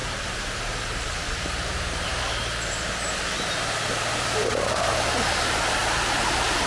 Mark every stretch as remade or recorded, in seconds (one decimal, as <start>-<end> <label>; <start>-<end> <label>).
0.0-2.2 remade; 2.2-6.7 recorded